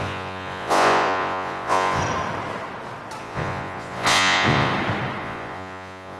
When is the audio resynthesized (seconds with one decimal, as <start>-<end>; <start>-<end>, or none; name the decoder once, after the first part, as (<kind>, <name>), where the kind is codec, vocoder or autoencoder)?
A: 0.0-2.0 (vocoder, Vocos); 3.2-4.7; 5.2-6.2

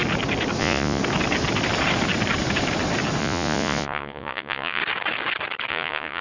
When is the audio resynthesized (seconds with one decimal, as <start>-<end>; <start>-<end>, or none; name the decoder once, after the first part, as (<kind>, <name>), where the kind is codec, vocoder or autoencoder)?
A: 0.6-1.0 (vocoder, Vocos); 3.2-4.8; 5.7-6.2